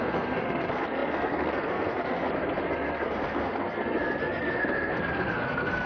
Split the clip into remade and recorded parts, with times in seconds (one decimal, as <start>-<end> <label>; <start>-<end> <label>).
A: 0.0-5.9 remade